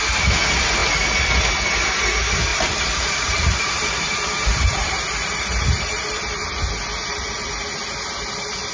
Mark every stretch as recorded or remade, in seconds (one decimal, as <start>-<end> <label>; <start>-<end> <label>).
0.0-2.5 recorded; 2.5-6.0 remade; 6.0-8.7 recorded